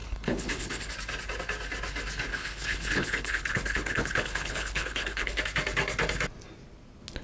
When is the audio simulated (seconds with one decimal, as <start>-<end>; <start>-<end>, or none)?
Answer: 0.0-0.9; 2.3-5.4